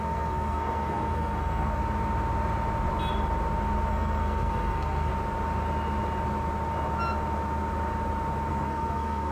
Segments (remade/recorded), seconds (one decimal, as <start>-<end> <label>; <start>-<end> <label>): 0.0-1.8 remade; 1.8-3.9 recorded; 3.9-5.1 remade; 5.1-8.5 recorded; 8.5-9.3 remade

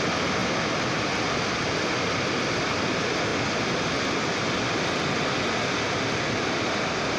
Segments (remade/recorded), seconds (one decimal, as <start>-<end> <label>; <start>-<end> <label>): 0.0-7.2 recorded